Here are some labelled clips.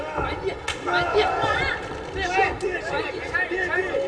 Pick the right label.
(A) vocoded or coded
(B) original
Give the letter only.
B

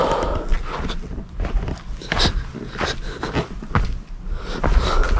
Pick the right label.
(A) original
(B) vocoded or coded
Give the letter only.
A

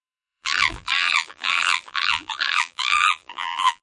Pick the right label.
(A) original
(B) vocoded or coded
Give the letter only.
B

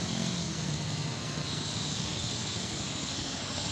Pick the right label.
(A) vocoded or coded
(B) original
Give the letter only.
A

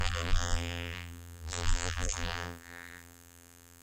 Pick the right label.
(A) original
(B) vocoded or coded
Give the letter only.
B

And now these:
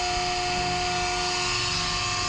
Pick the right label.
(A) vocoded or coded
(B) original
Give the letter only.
B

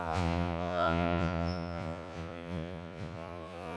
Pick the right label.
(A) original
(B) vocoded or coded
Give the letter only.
B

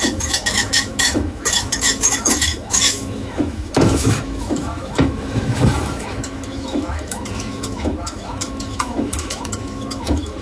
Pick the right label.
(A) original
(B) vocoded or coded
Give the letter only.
B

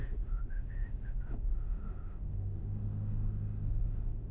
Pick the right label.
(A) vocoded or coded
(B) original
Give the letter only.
A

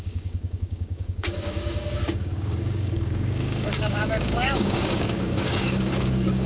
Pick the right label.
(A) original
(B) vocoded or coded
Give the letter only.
B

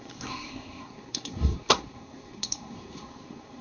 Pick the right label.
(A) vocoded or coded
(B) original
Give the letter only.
A